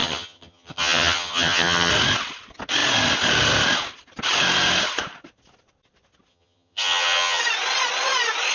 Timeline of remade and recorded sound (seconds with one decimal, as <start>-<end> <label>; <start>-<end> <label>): 0.0-1.9 remade; 1.9-6.3 recorded; 6.3-7.4 remade; 7.4-8.5 recorded